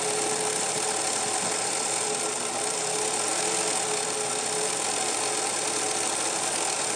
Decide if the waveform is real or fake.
real